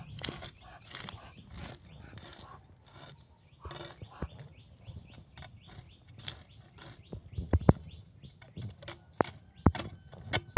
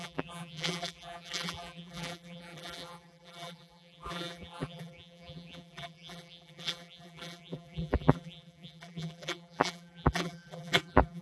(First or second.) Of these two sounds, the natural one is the first